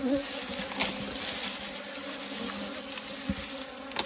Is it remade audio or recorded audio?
recorded